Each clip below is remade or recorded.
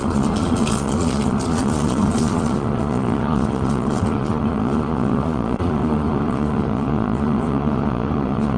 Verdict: remade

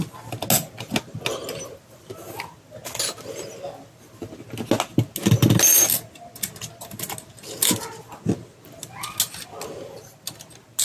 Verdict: recorded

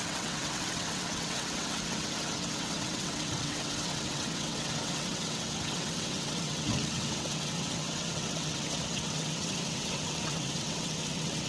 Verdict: remade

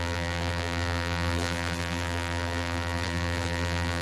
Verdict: remade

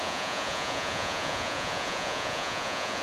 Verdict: remade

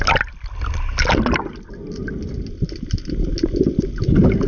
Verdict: recorded